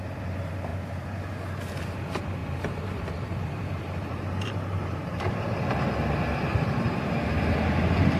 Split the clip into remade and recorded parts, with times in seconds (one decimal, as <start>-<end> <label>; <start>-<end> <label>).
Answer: 0.0-0.7 recorded; 0.7-1.6 remade; 1.6-2.4 recorded; 2.4-5.3 remade; 5.3-6.5 recorded; 6.5-7.2 remade; 7.2-8.2 recorded